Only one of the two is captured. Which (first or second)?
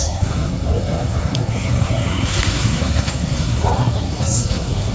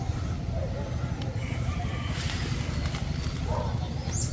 second